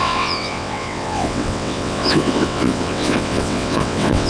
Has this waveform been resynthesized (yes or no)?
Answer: yes